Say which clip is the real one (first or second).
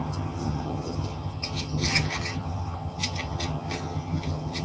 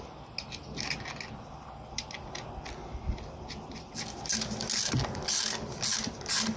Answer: second